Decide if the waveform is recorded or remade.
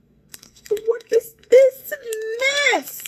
remade